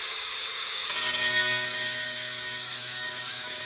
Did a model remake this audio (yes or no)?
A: yes